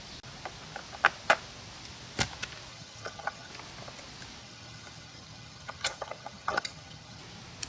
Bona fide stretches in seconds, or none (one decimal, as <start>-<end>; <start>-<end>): 0.0-2.7; 3.5-4.4; 7.2-7.7